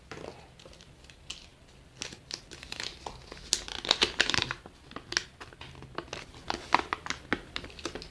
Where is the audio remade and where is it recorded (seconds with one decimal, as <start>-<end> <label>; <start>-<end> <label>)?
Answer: 0.0-8.1 recorded